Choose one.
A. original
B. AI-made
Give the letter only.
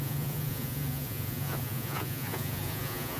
B